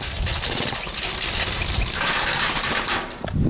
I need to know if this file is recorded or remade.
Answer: recorded